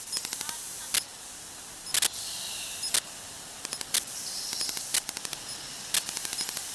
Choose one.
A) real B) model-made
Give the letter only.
B